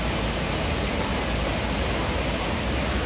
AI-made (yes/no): yes